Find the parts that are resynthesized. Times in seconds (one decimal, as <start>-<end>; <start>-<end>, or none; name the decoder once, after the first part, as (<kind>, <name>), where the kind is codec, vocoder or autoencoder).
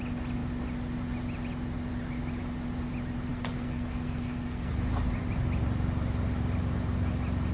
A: 3.3-4.7 (codec, SNAC)